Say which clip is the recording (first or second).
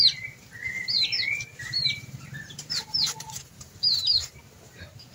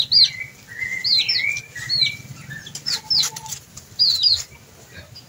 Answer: second